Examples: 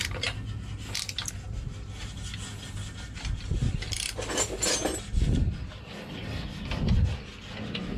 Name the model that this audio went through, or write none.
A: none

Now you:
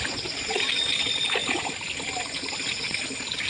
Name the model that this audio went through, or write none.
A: none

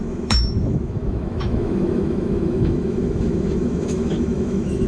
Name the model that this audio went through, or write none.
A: autoencoder, DAC-VAE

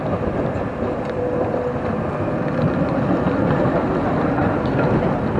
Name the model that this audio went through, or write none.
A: none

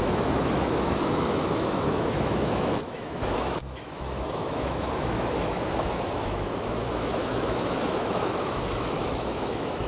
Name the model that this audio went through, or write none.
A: autoencoder, DAC-VAE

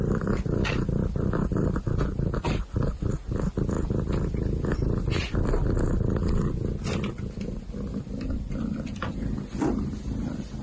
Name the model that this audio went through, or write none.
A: none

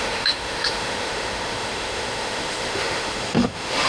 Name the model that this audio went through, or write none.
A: autoencoder, DAC-VAE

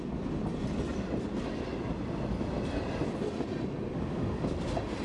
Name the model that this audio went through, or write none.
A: none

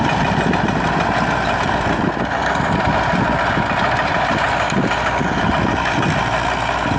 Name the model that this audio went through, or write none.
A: none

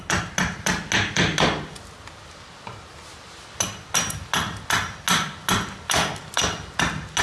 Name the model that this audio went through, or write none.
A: none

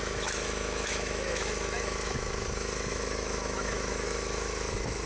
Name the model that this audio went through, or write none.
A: autoencoder, DAC-VAE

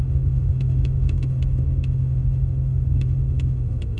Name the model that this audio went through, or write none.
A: autoencoder, DAC-VAE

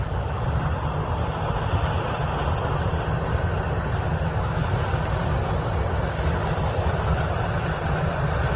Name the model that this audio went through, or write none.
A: none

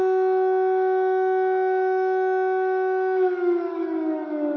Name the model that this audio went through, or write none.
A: autoencoder, DAC-VAE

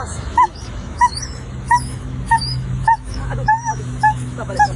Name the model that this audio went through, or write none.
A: autoencoder, DAC-VAE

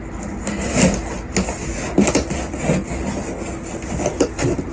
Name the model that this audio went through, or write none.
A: none